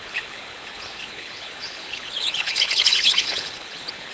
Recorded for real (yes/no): no